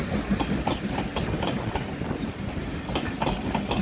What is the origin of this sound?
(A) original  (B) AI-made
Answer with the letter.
A